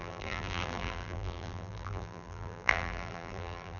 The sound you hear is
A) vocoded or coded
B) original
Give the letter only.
A